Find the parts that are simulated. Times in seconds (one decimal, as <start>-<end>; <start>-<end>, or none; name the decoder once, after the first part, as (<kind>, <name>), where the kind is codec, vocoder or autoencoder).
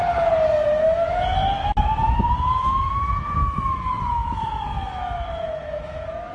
0.8-6.3 (autoencoder, DAC-VAE)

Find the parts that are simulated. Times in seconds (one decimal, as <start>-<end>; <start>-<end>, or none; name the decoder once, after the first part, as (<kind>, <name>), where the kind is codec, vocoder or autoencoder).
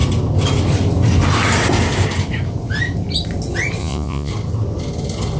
3.8-4.3 (vocoder, Vocos)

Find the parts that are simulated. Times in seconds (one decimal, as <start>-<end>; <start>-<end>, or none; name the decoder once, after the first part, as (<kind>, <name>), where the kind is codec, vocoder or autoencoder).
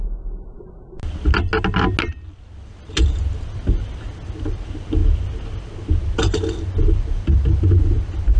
none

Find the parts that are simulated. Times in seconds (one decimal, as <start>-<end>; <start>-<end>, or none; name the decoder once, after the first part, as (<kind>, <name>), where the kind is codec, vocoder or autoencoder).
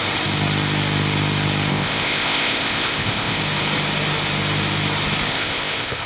1.7-3.4 (codec, ZipCodec); 5.3-6.1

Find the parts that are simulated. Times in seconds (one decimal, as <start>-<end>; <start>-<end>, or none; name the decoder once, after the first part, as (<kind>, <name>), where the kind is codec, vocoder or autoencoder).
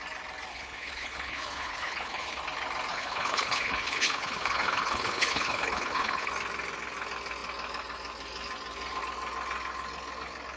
0.5-2.4 (codec, HILCodec); 2.9-6.3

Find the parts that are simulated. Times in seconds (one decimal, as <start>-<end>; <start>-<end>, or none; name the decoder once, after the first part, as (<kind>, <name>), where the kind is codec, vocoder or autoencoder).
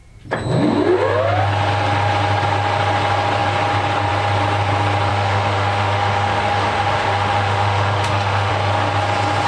5.1-8.5 (autoencoder, DAC-VAE)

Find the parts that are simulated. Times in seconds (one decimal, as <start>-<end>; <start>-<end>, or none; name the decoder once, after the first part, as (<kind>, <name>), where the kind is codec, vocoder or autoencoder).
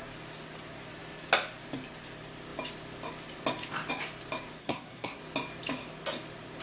4.6-5.2 (codec, SNAC)